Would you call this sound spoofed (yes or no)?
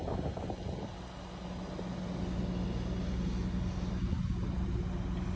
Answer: no